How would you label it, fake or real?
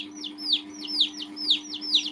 real